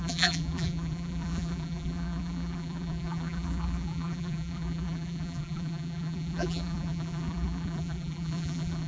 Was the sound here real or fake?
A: fake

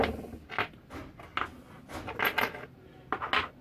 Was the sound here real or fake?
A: real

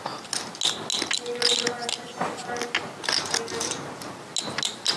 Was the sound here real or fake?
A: real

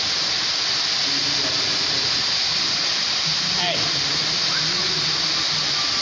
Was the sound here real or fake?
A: real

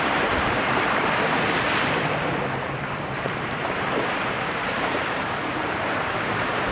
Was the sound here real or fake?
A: fake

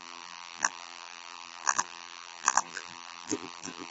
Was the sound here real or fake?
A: fake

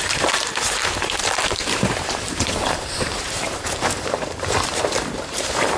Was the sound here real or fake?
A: fake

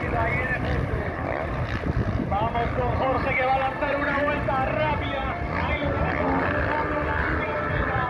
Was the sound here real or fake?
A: real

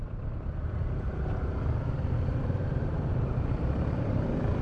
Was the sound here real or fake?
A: fake